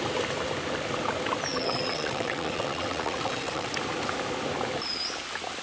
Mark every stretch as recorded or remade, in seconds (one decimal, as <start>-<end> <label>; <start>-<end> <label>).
0.0-1.5 recorded; 1.5-3.7 remade; 3.7-5.6 recorded